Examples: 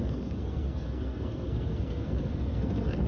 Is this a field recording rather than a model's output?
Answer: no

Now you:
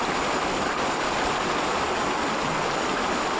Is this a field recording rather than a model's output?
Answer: yes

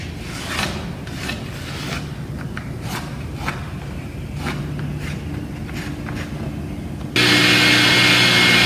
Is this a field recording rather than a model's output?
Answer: yes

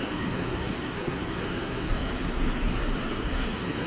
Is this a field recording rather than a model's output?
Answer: no